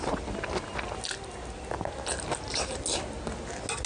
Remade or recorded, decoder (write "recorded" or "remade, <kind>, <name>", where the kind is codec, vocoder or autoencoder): recorded